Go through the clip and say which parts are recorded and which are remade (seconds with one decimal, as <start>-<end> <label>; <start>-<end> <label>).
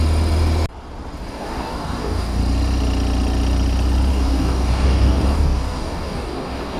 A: 0.0-1.3 recorded; 1.3-2.4 remade; 2.4-4.1 recorded; 4.1-6.8 remade